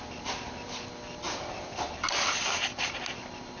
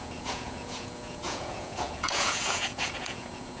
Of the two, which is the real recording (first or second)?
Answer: first